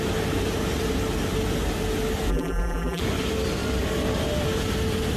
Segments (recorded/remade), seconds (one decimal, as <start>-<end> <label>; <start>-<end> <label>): 0.0-2.3 recorded; 2.3-3.0 remade; 3.0-5.2 recorded